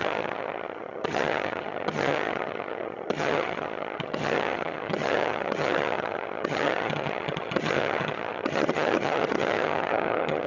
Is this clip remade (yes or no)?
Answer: yes